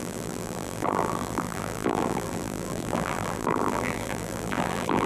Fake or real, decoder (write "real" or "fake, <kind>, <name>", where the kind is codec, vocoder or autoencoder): fake, vocoder, BigVGAN v2